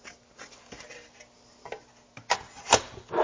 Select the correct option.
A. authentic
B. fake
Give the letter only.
A